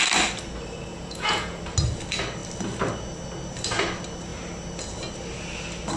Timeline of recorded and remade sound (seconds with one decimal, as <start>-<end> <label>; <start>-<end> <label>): 0.0-0.9 recorded; 0.9-1.6 remade; 1.6-6.0 recorded